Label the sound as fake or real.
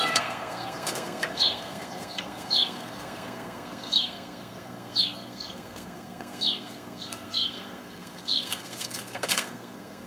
fake